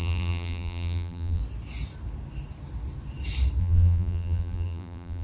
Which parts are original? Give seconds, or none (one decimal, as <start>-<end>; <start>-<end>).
1.4-3.6